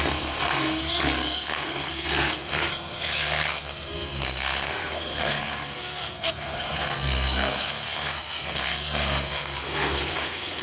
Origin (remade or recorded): remade